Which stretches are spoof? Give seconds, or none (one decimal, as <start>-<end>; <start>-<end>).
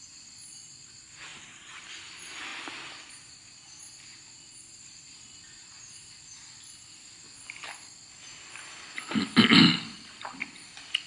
1.3-1.9; 9.6-11.1